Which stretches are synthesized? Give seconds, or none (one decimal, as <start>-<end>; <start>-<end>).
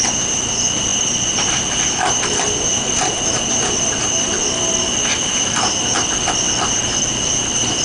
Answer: none